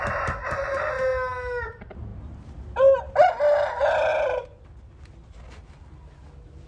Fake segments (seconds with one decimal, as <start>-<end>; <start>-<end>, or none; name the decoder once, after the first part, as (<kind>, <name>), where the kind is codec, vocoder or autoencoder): none